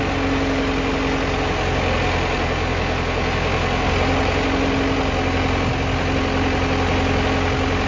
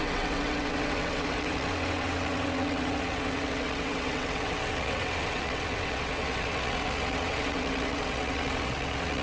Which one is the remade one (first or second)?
second